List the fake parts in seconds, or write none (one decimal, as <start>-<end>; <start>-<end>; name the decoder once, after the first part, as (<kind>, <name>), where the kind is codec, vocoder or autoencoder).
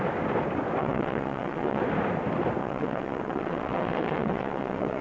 0.8-1.8 (vocoder, WaveNeXt); 2.6-5.0